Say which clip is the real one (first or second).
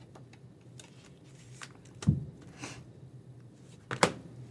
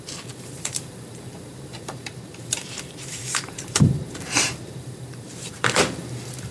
first